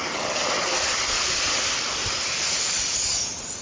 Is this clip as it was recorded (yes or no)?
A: yes